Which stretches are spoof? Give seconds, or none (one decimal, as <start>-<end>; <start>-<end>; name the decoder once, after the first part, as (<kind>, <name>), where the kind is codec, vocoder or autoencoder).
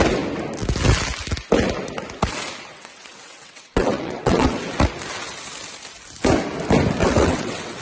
2.7-4.6 (vocoder, WaveNeXt); 7.0-7.8